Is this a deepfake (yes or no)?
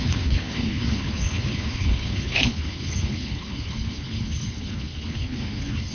yes